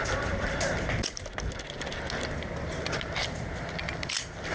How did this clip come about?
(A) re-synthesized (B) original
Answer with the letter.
B